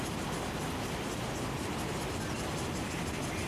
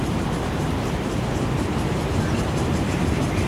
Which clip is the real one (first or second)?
first